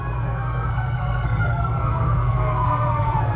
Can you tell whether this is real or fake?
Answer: fake